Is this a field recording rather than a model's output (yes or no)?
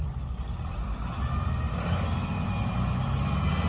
yes